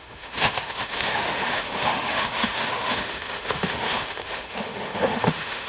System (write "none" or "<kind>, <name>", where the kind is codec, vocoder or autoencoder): autoencoder, DAC-VAE